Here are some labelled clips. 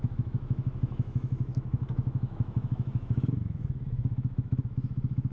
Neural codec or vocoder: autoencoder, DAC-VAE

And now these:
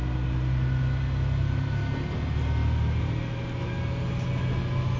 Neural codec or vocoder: none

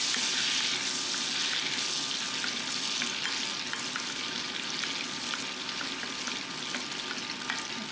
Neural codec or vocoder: none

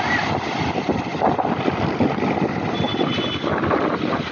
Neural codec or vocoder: none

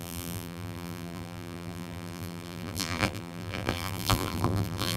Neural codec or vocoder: vocoder, BigVGAN v2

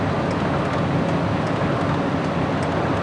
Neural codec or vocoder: none